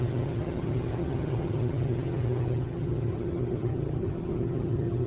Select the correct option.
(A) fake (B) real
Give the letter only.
A